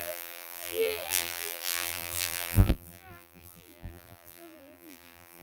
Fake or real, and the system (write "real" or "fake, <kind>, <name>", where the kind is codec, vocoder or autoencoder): fake, vocoder, BigVGAN v2